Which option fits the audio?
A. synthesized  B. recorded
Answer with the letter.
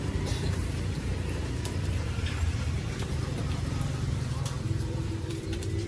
A